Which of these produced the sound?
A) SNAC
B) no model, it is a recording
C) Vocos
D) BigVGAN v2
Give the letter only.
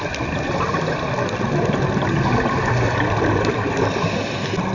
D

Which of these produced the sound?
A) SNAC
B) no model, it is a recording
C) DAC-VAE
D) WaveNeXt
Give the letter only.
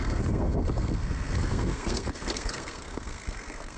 A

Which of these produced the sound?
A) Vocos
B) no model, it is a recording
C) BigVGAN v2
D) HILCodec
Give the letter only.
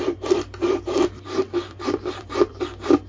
C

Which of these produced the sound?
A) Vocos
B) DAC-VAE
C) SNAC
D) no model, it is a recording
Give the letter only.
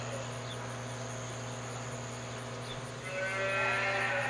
D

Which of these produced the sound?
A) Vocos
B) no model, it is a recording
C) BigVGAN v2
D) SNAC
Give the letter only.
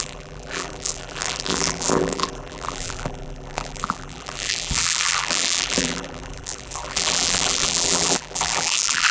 C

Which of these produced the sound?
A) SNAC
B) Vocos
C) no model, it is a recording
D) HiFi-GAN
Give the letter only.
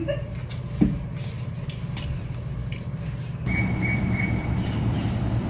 C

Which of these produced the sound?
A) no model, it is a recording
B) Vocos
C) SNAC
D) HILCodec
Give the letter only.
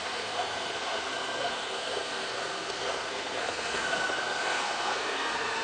C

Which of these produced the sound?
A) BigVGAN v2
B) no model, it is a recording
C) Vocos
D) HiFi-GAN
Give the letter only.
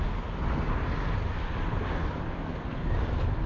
B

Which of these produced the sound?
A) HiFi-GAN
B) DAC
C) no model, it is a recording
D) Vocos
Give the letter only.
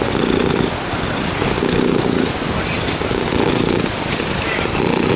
C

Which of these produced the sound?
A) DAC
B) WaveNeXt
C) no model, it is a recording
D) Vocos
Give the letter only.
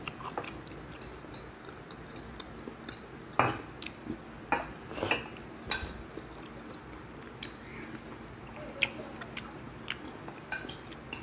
C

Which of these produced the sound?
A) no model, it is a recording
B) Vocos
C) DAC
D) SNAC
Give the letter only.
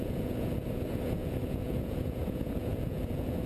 B